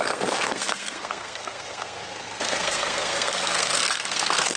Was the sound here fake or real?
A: fake